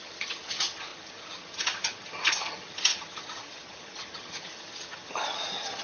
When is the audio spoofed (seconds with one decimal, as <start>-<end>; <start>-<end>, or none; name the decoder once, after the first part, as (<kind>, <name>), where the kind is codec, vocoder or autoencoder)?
0.0-5.8 (vocoder, HiFi-GAN)